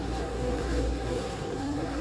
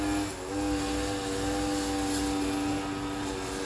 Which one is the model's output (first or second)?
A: first